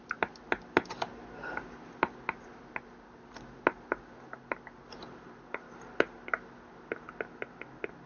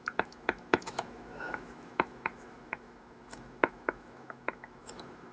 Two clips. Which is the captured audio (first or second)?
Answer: first